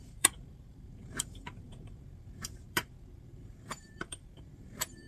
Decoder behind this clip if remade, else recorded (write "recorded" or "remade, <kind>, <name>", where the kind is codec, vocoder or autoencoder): remade, vocoder, BigVGAN v2